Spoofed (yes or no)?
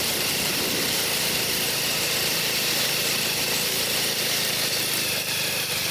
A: yes